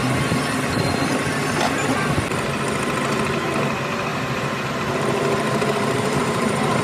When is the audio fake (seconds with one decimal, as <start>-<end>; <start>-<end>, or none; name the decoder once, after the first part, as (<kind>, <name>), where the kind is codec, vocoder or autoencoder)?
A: 4.1-6.8 (vocoder, BigVGAN v2)